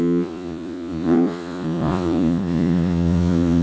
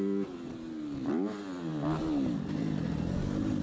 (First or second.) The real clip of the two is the second